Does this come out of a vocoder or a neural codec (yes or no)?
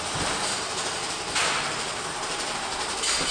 no